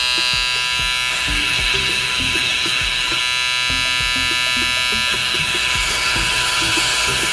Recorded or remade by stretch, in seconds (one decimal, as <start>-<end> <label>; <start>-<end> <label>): 0.0-1.1 recorded; 1.1-3.2 remade; 3.2-5.1 recorded; 5.1-7.3 remade